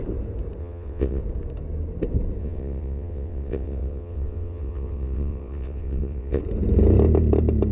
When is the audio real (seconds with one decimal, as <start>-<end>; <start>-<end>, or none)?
0.0-0.6; 1.2-2.4; 6.4-7.7